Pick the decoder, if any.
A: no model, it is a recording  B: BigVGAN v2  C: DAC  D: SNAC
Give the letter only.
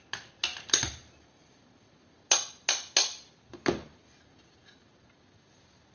A